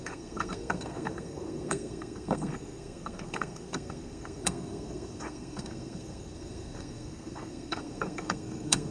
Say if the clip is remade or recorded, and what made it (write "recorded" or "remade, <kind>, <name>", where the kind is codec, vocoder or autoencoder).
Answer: remade, codec, SNAC